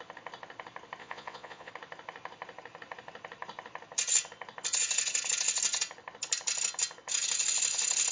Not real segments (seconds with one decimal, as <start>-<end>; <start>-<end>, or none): 1.0-1.7